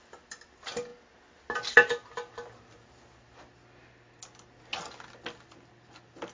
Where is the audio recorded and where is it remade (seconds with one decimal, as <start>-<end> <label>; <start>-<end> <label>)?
0.0-6.3 recorded